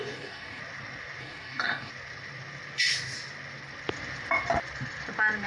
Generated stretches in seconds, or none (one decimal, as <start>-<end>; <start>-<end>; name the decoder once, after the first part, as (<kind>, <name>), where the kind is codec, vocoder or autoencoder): 0.0-0.6 (codec, DAC); 1.2-1.9